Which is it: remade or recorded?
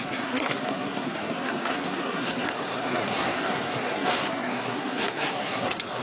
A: remade